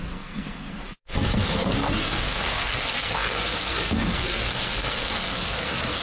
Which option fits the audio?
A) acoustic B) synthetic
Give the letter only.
B